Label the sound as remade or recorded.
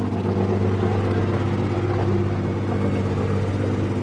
recorded